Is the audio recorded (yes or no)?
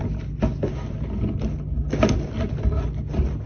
yes